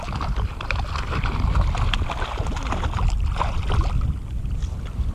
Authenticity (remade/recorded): recorded